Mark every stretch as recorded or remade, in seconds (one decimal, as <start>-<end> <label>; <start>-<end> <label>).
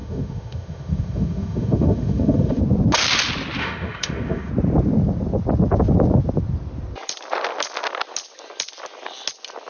0.0-2.6 remade; 2.6-3.6 recorded; 3.6-4.5 remade; 4.5-9.7 recorded